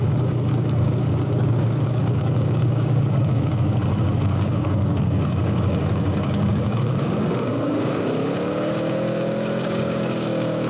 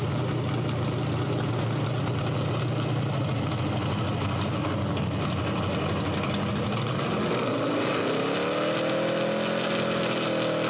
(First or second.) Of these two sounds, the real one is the second